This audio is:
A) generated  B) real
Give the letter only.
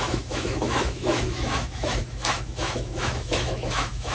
A